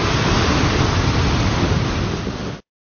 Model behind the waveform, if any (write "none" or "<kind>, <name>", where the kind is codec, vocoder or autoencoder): none